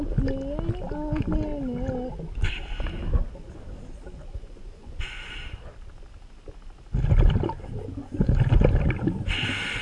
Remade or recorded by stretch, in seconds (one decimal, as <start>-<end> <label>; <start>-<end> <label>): 0.0-4.2 recorded; 4.2-5.5 remade; 5.5-9.8 recorded